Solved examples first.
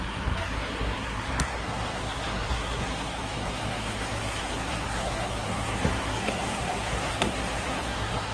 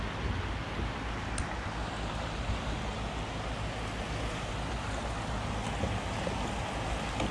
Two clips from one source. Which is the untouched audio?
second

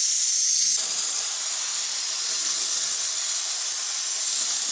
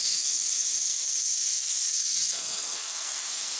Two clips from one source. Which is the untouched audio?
first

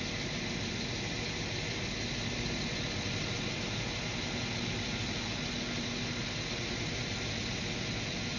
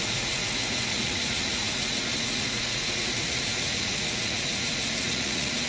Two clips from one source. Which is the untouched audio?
first